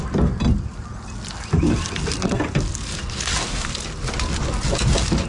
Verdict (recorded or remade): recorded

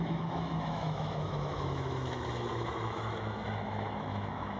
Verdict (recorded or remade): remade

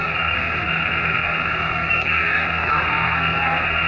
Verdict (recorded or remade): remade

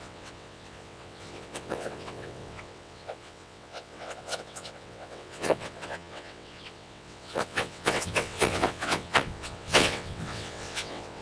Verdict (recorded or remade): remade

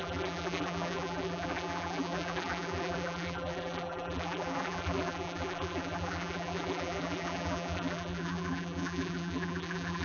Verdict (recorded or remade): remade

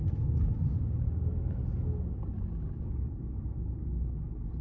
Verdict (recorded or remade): recorded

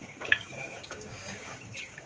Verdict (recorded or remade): remade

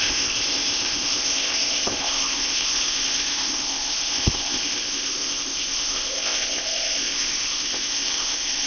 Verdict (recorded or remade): remade